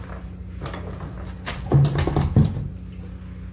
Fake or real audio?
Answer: real